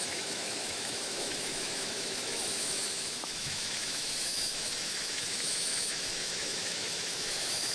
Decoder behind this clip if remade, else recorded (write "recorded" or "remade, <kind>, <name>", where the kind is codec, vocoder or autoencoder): remade, autoencoder, DAC-VAE